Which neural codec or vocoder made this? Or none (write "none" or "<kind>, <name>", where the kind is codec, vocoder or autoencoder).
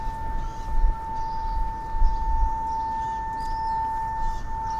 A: none